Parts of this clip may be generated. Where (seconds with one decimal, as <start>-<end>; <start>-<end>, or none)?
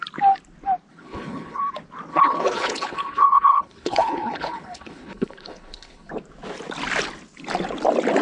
0.9-1.6; 2.1-6.1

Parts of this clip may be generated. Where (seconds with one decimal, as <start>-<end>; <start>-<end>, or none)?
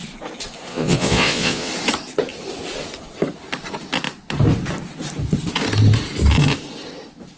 0.7-1.7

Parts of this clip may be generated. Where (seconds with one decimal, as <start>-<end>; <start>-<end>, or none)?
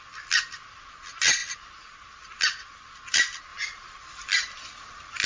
none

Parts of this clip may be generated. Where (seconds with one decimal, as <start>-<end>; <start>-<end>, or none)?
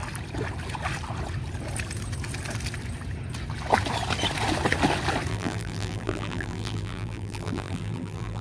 5.3-8.4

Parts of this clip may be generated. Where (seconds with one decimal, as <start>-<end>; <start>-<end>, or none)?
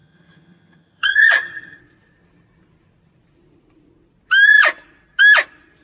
0.0-1.8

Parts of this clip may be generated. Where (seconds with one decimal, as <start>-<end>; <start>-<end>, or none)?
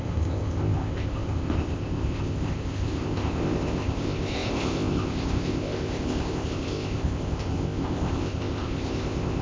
0.0-9.4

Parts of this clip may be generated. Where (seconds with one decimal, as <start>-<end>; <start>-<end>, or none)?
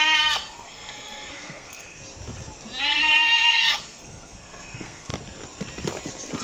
0.0-2.0; 2.8-5.1